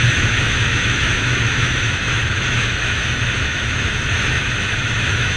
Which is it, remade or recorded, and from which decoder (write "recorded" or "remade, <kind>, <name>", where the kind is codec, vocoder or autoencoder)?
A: remade, autoencoder, DAC-VAE